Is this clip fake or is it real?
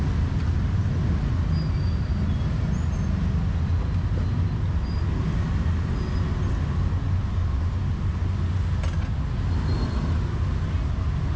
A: real